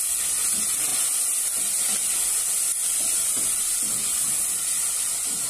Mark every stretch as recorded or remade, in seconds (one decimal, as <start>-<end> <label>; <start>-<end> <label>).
0.0-5.5 recorded